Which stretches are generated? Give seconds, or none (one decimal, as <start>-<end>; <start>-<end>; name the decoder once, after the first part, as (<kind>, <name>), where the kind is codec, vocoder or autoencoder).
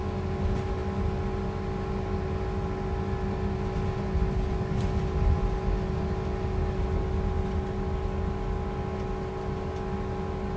none